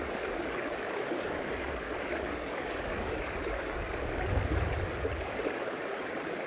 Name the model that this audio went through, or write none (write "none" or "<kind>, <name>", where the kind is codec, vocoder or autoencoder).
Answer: codec, DAC